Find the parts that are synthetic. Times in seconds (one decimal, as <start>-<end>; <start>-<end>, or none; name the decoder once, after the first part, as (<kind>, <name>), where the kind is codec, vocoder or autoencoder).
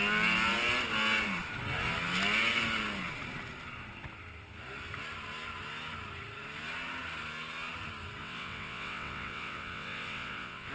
8.2-10.7 (vocoder, WaveNeXt)